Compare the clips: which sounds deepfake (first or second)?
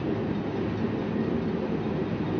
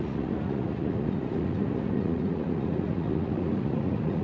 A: second